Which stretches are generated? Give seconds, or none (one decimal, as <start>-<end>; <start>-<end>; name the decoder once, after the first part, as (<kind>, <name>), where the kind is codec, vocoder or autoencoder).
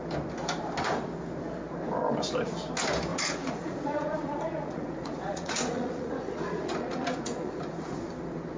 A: 3.1-8.0 (vocoder, Vocos)